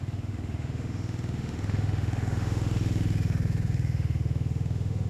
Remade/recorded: remade